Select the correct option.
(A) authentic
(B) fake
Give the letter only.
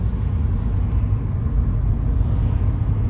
A